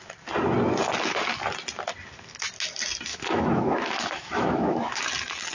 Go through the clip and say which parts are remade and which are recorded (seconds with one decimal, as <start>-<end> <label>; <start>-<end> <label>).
0.0-3.1 recorded; 3.1-5.0 remade; 5.0-5.5 recorded